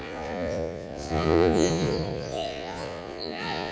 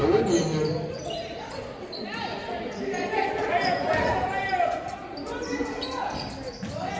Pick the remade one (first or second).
first